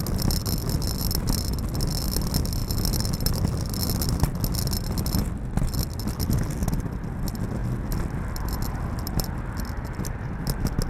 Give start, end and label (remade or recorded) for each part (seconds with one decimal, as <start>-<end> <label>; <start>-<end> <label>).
0.0-10.9 recorded

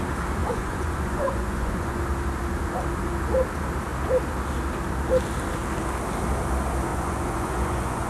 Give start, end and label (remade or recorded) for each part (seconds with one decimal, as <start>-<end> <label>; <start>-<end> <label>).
0.0-0.4 recorded; 0.4-2.0 remade; 2.0-6.9 recorded; 6.9-8.1 remade